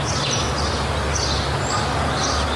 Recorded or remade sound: recorded